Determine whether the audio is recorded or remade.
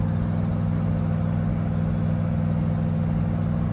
recorded